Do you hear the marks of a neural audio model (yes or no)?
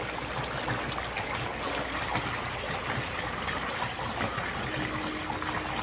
no